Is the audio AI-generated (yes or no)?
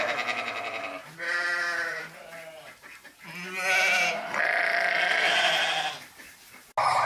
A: no